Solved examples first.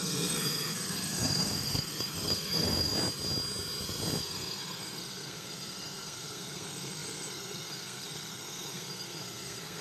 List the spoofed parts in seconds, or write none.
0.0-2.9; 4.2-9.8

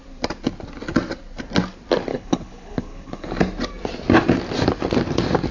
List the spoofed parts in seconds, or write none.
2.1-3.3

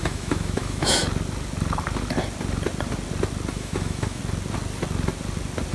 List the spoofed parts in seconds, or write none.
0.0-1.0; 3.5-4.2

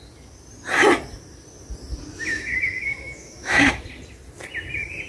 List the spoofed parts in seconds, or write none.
2.3-3.7

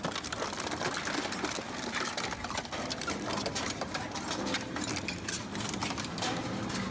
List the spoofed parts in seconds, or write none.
3.3-4.0; 5.8-6.4

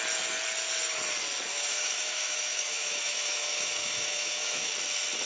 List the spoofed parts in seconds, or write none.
1.5-4.7

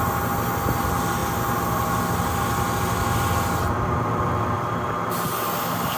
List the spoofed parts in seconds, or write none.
none

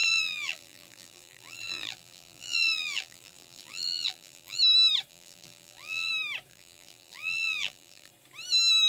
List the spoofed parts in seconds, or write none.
0.0-4.6; 5.1-6.1; 6.5-8.1